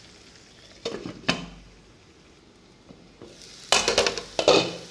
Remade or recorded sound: recorded